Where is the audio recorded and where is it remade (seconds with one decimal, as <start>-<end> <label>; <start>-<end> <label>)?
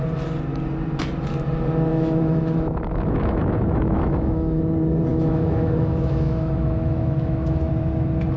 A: 0.0-1.9 recorded; 1.9-4.6 remade; 4.6-5.1 recorded; 5.1-7.7 remade; 7.7-8.4 recorded